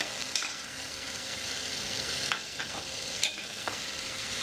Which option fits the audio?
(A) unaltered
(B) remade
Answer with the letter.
B